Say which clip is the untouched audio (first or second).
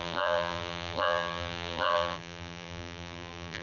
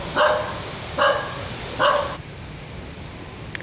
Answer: second